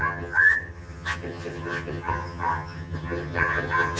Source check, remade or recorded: remade